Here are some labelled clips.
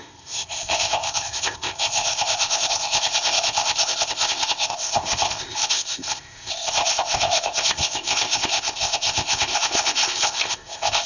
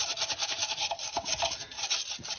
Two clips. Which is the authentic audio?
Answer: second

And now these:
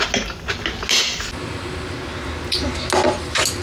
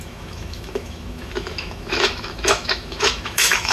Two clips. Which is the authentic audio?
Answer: first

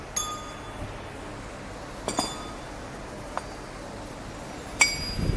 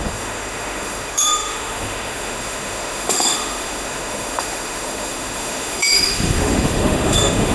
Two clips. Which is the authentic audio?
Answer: first